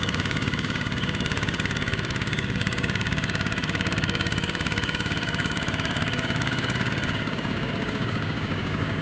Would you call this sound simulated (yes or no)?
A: yes